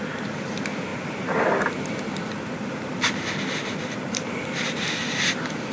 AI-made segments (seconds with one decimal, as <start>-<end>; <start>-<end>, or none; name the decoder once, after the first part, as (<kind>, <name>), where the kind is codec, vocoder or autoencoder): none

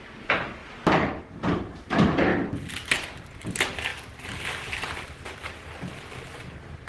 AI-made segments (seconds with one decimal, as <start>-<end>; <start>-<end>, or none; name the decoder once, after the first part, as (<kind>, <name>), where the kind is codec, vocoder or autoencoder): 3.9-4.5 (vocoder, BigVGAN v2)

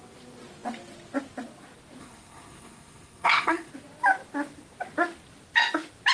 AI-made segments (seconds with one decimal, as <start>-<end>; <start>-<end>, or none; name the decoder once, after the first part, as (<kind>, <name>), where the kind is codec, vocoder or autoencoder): 2.0-3.7 (codec, SNAC)

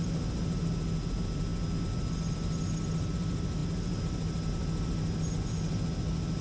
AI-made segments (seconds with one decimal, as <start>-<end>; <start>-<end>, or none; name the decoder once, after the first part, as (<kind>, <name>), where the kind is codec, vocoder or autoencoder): none

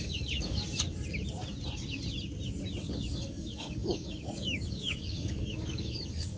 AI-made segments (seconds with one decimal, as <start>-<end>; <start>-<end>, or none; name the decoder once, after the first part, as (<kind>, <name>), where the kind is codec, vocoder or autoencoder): 0.0-0.6 (codec, DAC); 2.8-6.4

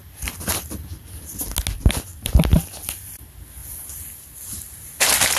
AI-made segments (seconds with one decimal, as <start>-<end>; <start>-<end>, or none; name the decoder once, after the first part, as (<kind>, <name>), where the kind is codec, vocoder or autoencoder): 0.0-1.0 (vocoder, BigVGAN v2); 3.6-5.4